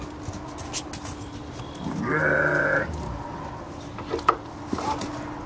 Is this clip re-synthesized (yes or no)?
no